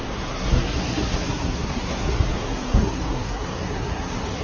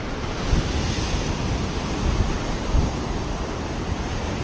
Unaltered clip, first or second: second